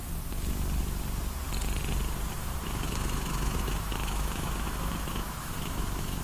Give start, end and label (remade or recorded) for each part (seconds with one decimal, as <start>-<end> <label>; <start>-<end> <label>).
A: 0.0-2.4 recorded; 2.4-6.2 remade